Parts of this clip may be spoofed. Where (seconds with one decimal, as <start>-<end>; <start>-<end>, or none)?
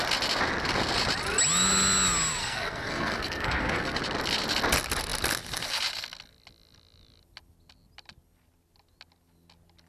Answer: 2.4-4.0